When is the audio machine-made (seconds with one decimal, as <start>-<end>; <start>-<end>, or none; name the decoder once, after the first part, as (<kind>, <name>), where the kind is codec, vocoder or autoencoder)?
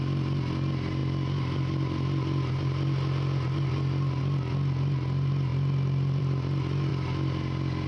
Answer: none